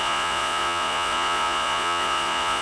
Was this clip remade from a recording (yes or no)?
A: yes